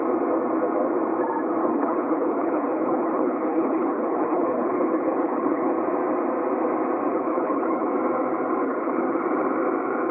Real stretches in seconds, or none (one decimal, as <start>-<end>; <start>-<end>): 0.0-1.6; 5.7-7.1; 7.9-8.6; 9.2-10.1